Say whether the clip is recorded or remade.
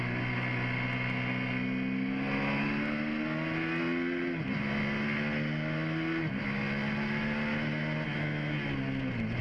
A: recorded